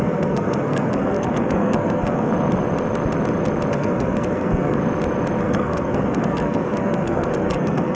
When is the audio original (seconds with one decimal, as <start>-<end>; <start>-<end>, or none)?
2.3-3.7; 4.8-5.4